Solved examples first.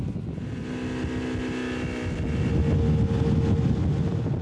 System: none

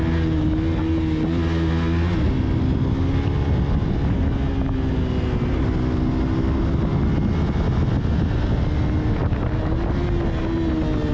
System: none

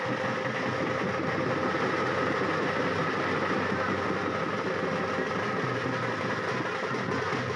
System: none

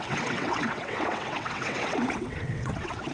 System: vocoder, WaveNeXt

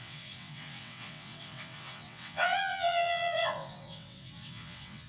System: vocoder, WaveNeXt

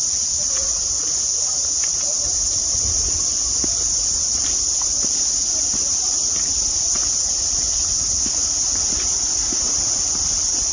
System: none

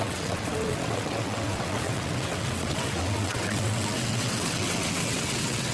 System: vocoder, WaveNeXt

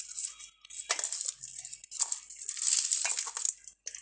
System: none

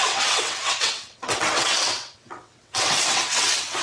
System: vocoder, WaveNeXt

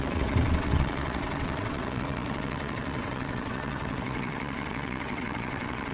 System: vocoder, WaveNeXt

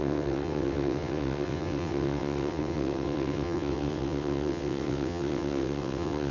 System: vocoder, WaveNeXt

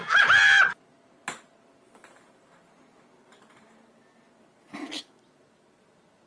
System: none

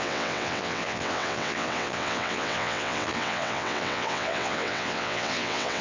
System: vocoder, WaveNeXt